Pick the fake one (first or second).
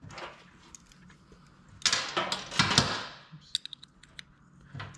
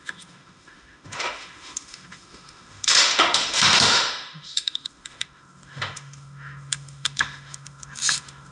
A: second